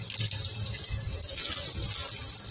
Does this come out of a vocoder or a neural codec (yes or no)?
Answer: no